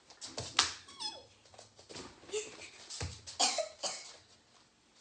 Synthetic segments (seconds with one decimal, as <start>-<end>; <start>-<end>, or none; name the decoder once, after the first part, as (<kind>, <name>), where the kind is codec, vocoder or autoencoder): none